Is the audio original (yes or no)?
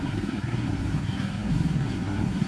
no